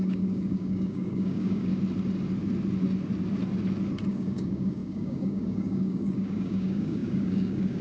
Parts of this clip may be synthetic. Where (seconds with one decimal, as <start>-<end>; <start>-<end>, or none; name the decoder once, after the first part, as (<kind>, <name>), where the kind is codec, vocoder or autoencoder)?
0.0-1.7 (codec, DAC); 4.1-7.8